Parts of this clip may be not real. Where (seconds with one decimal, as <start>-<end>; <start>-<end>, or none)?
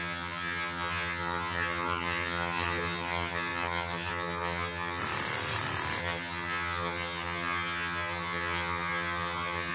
0.0-5.0; 6.0-9.7